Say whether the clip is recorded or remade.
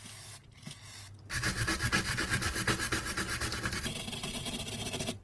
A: recorded